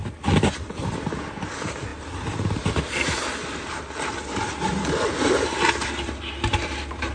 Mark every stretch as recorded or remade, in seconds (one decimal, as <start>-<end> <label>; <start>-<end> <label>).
0.0-7.1 recorded